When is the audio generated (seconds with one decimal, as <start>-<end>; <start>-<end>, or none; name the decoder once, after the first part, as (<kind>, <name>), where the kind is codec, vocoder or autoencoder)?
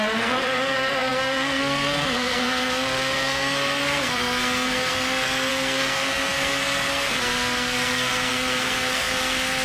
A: 0.0-9.6 (codec, SNAC)